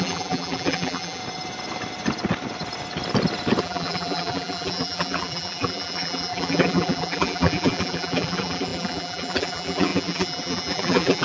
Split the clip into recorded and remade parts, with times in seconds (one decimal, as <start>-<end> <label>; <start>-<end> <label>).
0.0-1.2 remade; 1.2-3.6 recorded; 3.6-11.2 remade

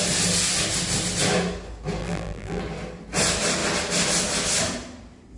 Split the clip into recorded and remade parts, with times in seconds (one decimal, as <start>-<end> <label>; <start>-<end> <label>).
0.0-2.0 recorded; 2.0-2.6 remade; 2.6-5.4 recorded